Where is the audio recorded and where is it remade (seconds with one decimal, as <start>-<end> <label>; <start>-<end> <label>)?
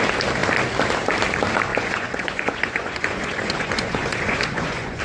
0.0-1.7 recorded; 1.7-5.0 remade